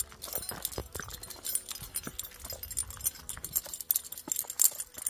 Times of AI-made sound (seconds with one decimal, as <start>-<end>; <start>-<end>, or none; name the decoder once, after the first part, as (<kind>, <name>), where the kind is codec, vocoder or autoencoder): none